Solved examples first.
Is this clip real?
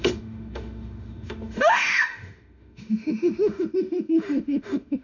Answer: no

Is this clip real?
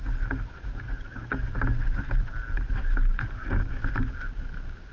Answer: yes